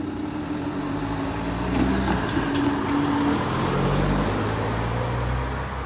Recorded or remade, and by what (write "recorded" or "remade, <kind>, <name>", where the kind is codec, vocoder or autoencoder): recorded